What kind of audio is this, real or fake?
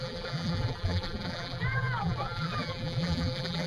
fake